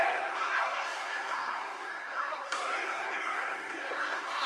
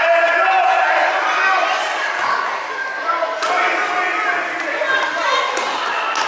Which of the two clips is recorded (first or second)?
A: second